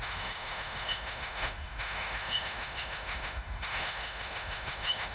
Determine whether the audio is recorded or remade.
remade